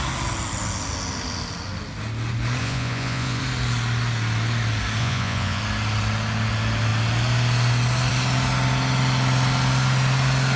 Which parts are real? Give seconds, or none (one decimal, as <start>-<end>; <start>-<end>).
0.0-2.6; 3.4-5.0; 5.6-10.6